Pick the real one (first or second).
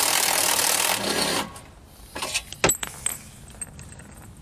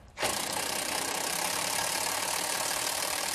first